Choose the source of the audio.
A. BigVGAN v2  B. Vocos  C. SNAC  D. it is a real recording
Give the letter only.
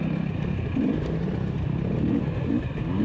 D